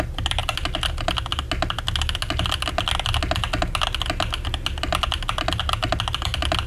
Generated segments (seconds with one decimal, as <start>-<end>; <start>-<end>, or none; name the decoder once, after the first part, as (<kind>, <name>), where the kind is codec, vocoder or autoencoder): none